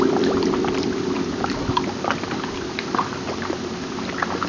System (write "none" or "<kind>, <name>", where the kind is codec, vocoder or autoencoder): vocoder, BigVGAN v2